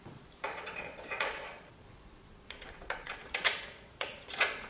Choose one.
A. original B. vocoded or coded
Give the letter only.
B